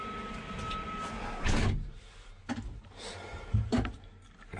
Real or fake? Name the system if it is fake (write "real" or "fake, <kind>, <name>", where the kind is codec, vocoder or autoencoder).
real